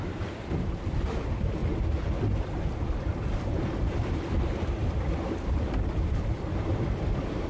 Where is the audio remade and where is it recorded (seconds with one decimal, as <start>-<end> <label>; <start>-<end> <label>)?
0.0-7.5 recorded